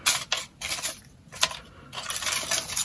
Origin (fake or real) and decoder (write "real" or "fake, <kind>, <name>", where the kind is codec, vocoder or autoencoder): real